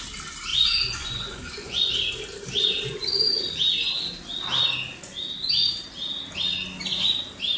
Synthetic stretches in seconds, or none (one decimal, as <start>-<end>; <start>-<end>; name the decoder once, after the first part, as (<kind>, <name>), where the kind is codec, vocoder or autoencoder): 0.5-1.9 (vocoder, Vocos)